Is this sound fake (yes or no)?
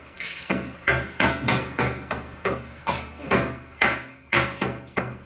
yes